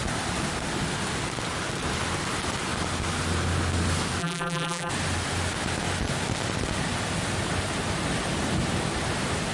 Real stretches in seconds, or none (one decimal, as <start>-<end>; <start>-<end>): 0.0-4.2; 4.9-9.5